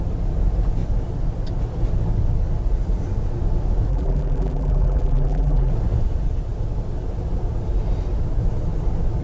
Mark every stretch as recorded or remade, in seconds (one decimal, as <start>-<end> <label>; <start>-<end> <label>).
0.0-3.9 recorded; 3.9-5.7 remade; 5.7-9.2 recorded